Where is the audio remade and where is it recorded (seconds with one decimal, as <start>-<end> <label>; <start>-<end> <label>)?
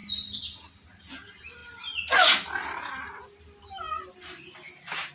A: 0.0-5.1 recorded